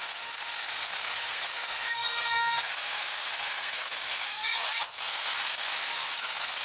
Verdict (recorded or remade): remade